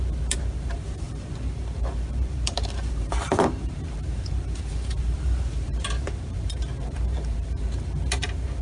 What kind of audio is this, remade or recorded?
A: remade